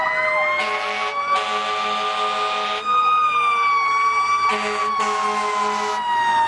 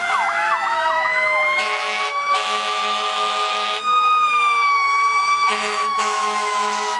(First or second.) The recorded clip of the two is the first